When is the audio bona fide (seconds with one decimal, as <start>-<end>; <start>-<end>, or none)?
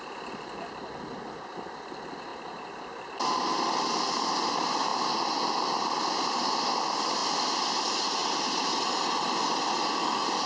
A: 2.3-4.5; 4.9-6.0; 7.2-7.7; 8.2-10.0